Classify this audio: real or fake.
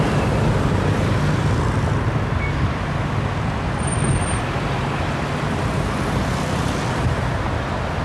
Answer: real